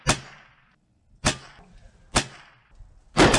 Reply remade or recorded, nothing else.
recorded